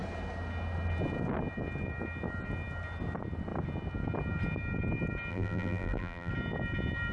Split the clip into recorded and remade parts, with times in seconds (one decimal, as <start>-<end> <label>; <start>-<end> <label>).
0.0-5.3 recorded; 5.3-6.3 remade; 6.3-7.1 recorded